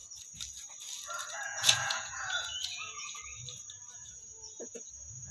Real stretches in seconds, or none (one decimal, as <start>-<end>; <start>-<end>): 0.0-1.3; 3.2-3.9